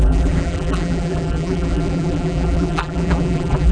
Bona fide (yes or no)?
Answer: no